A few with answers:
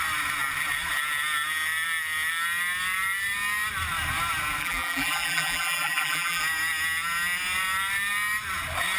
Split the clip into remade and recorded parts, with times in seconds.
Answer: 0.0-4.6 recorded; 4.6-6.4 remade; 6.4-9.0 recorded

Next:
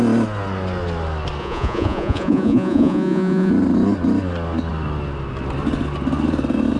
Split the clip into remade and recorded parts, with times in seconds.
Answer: 0.0-1.4 recorded; 1.4-3.5 remade; 3.5-6.8 recorded

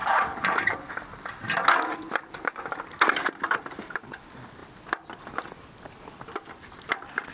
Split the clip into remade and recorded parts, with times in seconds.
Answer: 0.0-0.9 remade; 0.9-7.3 recorded

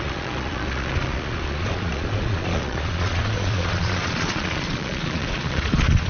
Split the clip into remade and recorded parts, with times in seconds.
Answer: 0.0-6.1 remade